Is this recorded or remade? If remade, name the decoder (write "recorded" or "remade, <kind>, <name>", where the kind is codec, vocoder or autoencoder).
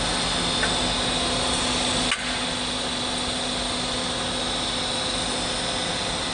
recorded